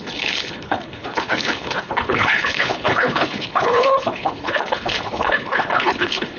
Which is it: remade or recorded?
remade